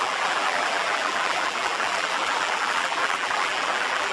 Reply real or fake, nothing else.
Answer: fake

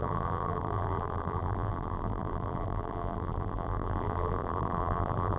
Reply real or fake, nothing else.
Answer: fake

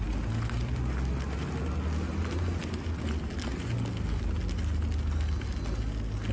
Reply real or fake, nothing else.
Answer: real